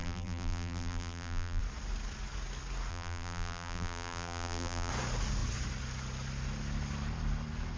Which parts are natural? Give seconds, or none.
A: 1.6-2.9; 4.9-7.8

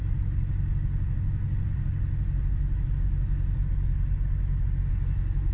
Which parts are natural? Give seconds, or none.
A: 0.0-5.5

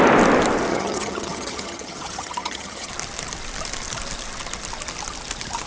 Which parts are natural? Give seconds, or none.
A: 0.0-0.7; 2.9-5.7

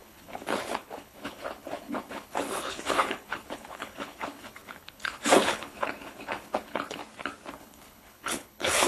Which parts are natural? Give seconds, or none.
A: 7.0-7.5

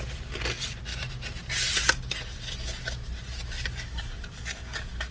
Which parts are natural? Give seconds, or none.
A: 0.0-5.1

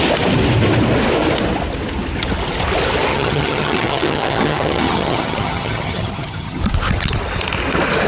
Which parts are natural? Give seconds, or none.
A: 0.0-3.1; 6.6-8.1